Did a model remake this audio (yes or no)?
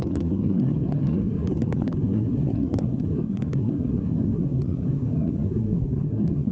yes